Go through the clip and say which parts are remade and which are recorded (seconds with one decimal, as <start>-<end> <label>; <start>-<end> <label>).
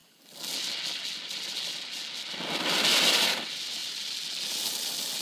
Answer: 0.0-3.1 recorded; 3.1-5.2 remade